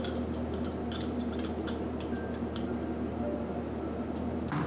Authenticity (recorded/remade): recorded